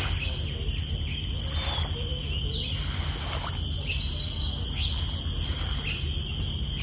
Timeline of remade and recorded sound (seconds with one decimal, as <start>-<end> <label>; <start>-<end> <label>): 0.0-6.8 recorded